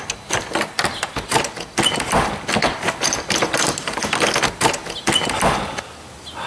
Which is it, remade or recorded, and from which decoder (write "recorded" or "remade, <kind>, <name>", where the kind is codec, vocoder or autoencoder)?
recorded